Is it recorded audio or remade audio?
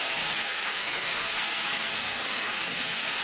remade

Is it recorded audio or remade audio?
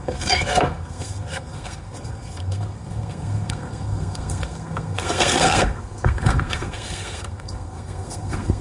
remade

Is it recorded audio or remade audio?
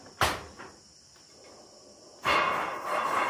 recorded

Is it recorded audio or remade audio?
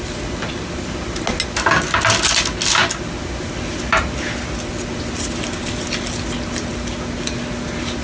recorded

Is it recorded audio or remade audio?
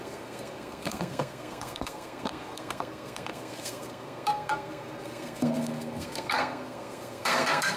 remade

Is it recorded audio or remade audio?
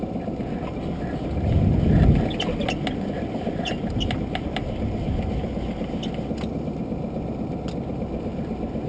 recorded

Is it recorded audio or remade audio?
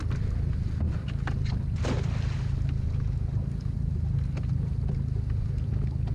recorded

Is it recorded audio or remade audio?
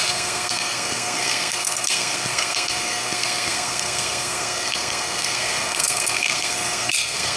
remade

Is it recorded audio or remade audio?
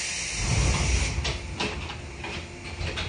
recorded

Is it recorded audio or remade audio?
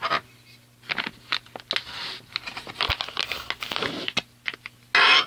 recorded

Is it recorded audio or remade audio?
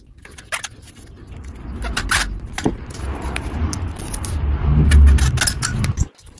recorded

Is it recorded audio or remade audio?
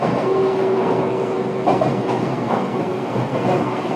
remade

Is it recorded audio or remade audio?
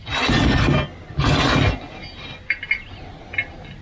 recorded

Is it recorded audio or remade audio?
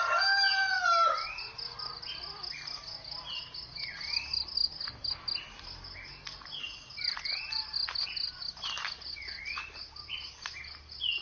recorded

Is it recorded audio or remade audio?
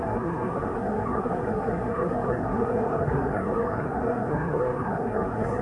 remade